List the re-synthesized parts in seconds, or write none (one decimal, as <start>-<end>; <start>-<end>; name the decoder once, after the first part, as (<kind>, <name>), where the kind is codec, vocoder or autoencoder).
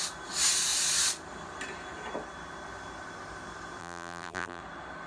3.8-4.6 (vocoder, BigVGAN v2)